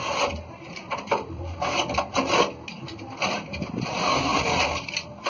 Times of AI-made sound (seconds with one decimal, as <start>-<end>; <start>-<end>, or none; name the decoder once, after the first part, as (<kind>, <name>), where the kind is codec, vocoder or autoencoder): 0.0-2.1 (vocoder, BigVGAN v2); 3.2-4.3